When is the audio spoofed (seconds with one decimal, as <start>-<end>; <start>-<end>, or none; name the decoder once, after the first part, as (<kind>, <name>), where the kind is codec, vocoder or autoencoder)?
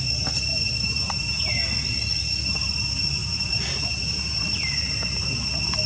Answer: 0.5-1.6 (vocoder, BigVGAN v2); 3.2-5.2